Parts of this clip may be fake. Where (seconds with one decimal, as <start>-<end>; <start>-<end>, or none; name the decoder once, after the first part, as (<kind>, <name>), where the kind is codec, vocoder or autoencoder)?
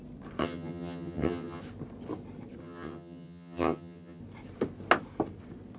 0.4-1.6 (vocoder, HiFi-GAN); 2.6-4.2